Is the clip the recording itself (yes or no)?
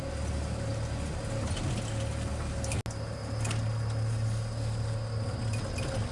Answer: yes